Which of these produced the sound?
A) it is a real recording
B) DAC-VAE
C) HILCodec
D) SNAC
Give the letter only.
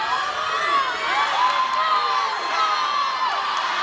A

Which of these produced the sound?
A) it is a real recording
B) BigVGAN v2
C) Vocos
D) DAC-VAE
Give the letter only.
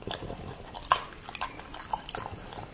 A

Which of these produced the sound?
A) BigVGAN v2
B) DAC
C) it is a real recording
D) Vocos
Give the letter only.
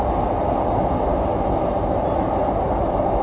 C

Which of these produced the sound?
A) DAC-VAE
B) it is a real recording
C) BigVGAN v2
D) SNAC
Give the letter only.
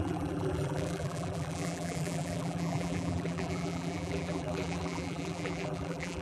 C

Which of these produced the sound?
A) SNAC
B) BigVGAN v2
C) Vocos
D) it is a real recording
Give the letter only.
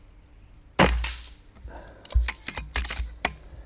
D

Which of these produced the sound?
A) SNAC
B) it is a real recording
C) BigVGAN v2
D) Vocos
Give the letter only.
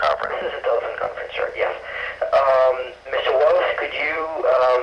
C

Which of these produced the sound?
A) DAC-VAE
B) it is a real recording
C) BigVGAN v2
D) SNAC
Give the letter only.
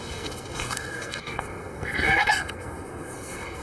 D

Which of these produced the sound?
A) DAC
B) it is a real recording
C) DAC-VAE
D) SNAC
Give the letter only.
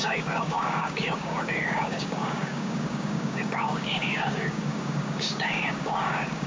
A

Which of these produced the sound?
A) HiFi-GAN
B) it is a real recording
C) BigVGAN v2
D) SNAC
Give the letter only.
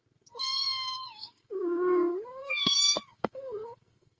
D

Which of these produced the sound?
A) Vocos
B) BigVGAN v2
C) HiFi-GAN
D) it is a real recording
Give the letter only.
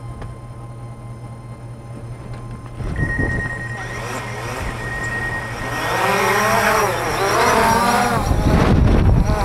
D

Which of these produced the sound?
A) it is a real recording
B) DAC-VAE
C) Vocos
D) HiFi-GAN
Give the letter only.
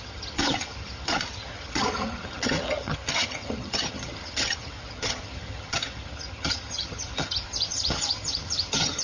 D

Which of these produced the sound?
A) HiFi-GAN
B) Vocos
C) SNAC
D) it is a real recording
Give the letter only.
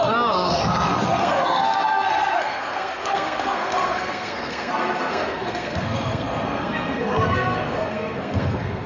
C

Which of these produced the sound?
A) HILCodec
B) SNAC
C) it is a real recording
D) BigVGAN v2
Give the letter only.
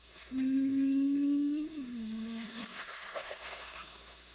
B